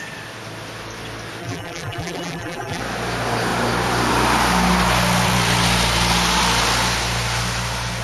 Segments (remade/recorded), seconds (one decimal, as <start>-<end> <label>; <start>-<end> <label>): 0.0-1.4 recorded; 1.4-2.8 remade; 2.8-8.0 recorded